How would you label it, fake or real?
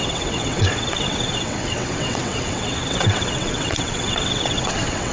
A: fake